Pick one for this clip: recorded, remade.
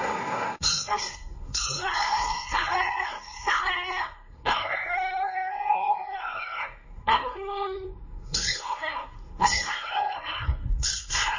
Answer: remade